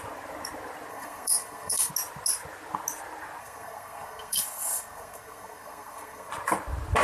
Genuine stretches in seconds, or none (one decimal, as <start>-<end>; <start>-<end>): 0.0-0.9; 1.9-3.4; 6.3-7.0